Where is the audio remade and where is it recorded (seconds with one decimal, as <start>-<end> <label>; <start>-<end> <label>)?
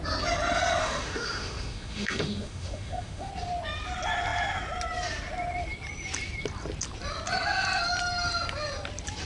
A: 0.0-0.8 recorded; 0.8-3.3 remade; 3.3-9.2 recorded